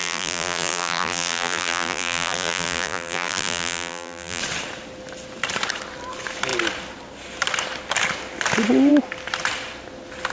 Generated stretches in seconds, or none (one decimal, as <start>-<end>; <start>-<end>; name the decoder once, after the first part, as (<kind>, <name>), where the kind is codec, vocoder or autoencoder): 0.0-4.4 (vocoder, BigVGAN v2)